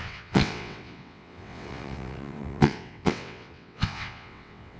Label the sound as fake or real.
fake